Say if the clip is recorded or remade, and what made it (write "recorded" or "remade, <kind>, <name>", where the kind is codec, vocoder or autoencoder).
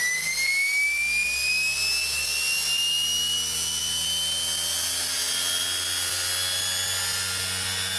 recorded